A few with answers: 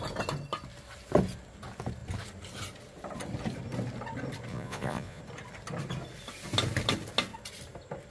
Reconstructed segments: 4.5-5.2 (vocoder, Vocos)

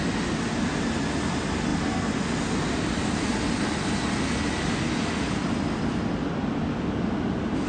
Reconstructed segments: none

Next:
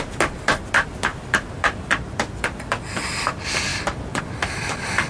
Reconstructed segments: 1.1-2.7 (vocoder, BigVGAN v2); 3.7-4.2

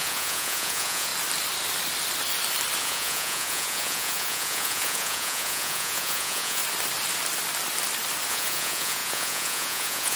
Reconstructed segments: 0.0-1.1 (vocoder, Vocos); 2.8-6.6; 8.3-10.2

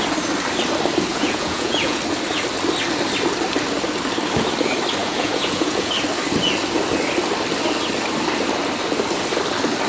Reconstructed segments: 1.1-2.0 (vocoder, Vocos); 5.0-5.9

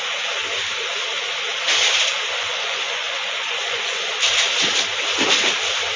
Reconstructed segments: 2.1-4.1 (vocoder, Vocos)

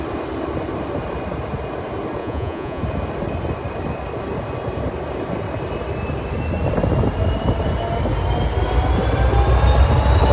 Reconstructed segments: 2.2-2.8 (vocoder, Vocos)